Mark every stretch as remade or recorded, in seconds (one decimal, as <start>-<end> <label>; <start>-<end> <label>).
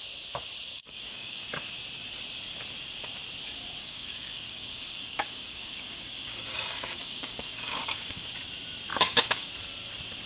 0.0-0.8 recorded; 0.8-1.4 remade; 1.4-3.8 recorded; 3.8-8.3 remade; 8.3-8.9 recorded; 8.9-9.5 remade; 9.5-10.3 recorded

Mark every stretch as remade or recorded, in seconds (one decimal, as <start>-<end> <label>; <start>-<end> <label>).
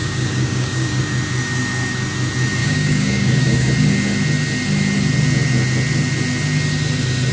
0.0-1.0 remade; 1.0-2.6 recorded; 2.6-3.7 remade; 3.7-7.3 recorded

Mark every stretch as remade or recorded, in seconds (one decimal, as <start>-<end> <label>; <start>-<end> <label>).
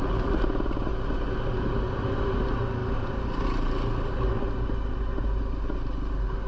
0.0-6.5 recorded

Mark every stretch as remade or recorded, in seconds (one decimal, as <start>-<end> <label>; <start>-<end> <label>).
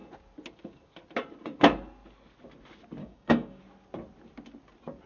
0.0-3.0 recorded; 3.0-3.6 remade; 3.6-5.1 recorded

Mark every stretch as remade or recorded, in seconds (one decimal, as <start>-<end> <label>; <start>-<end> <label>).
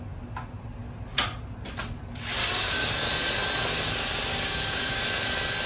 0.0-2.4 recorded; 2.4-3.1 remade; 3.1-4.3 recorded; 4.3-5.0 remade; 5.0-5.7 recorded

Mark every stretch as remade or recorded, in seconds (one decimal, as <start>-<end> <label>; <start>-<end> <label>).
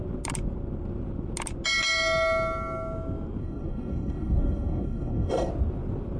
0.0-3.4 recorded; 3.4-5.5 remade; 5.5-6.2 recorded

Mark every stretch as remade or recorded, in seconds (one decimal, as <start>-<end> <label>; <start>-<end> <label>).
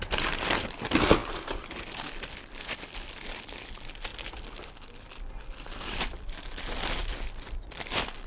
0.0-8.3 recorded